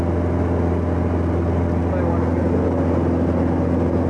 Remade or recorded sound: recorded